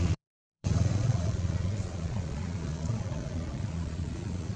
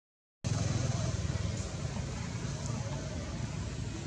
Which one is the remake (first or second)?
first